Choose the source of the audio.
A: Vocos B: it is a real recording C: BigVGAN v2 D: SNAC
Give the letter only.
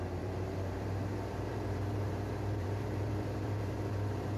C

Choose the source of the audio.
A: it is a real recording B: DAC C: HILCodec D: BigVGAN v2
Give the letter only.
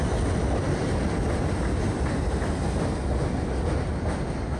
A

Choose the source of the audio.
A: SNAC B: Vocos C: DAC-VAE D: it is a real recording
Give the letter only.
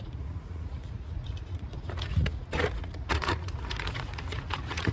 B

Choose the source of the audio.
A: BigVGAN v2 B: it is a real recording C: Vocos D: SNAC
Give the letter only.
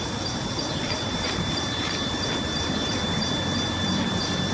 A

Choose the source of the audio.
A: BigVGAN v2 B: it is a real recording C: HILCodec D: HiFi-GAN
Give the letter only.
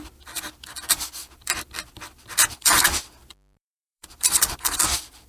A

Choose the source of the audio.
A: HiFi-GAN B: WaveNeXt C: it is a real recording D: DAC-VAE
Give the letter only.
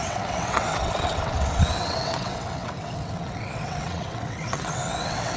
B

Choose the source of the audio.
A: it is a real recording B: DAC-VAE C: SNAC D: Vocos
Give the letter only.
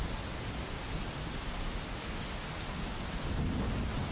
A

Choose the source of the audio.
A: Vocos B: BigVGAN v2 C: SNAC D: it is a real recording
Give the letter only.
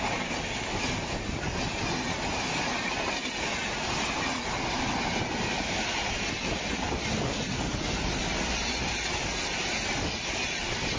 D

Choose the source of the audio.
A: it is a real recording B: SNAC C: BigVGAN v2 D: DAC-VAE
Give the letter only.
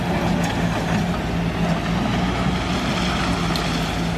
A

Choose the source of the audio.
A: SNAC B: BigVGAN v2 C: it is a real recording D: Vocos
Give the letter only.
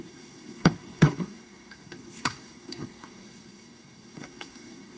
A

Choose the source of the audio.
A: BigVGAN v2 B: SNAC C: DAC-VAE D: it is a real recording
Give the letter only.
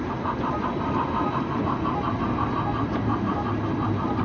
D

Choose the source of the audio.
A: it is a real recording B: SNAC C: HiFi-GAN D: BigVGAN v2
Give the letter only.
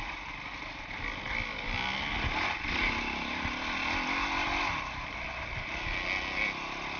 A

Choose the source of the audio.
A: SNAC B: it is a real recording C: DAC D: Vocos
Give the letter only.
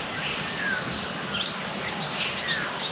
B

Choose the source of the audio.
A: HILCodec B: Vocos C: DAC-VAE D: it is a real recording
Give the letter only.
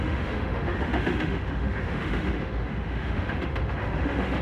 C